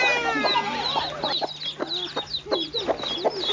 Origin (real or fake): real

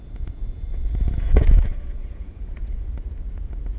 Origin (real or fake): fake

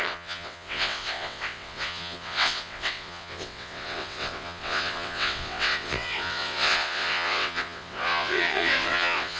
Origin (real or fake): fake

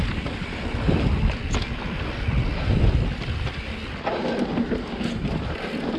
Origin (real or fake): real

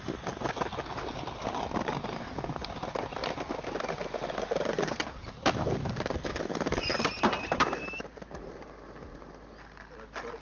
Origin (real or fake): real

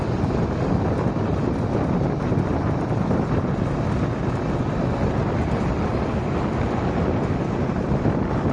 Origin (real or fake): real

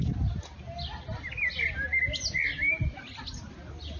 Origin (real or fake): real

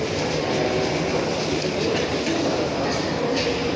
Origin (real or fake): real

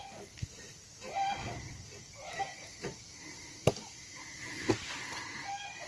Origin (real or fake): real